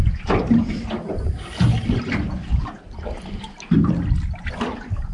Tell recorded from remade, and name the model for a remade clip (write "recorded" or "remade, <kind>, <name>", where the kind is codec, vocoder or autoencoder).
recorded